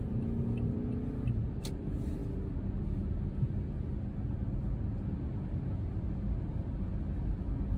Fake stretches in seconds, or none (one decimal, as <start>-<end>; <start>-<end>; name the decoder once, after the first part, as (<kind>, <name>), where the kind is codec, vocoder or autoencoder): none